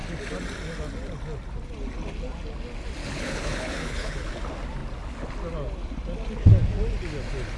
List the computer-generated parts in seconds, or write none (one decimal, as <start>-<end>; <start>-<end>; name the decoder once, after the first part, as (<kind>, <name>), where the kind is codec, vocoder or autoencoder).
3.0-4.3 (codec, HILCodec)